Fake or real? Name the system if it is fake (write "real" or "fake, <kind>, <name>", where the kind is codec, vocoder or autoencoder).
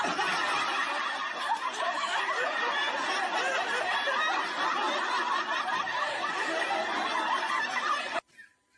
real